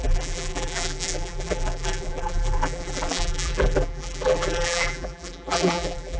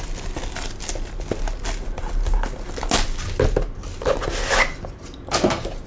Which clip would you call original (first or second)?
second